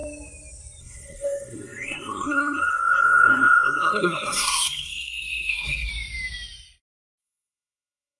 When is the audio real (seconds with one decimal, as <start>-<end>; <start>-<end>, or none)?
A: 0.0-0.8; 5.9-7.2